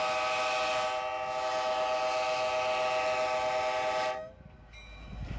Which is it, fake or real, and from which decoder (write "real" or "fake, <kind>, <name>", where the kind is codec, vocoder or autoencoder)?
real